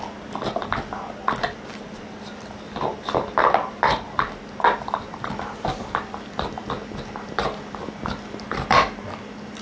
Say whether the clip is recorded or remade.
recorded